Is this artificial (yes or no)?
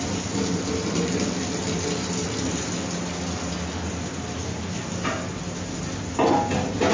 no